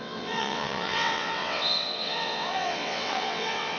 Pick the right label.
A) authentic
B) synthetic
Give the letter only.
B